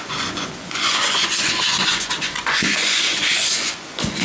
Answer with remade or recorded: remade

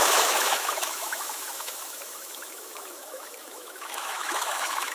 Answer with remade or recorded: remade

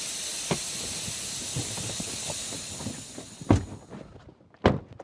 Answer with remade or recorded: recorded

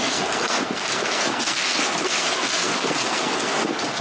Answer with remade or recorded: remade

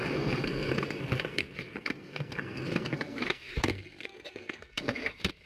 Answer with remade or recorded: remade